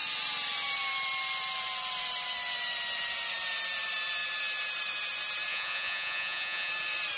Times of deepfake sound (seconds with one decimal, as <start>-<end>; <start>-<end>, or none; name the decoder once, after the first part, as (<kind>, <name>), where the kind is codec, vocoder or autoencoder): 5.5-6.7 (vocoder, Vocos)